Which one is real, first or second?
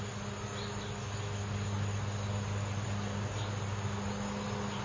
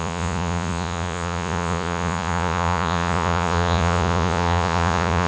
first